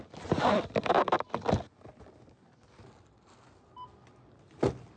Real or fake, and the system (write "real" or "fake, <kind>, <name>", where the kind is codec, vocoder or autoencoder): real